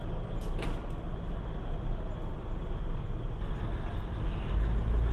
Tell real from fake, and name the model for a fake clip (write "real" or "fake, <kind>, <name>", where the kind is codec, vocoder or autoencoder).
real